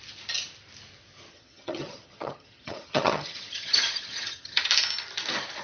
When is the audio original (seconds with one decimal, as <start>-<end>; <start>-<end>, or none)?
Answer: 0.0-1.3; 4.7-5.6